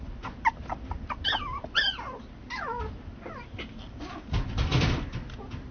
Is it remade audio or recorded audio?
recorded